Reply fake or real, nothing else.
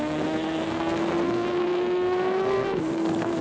fake